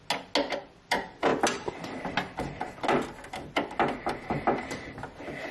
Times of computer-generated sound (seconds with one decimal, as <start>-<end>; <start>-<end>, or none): none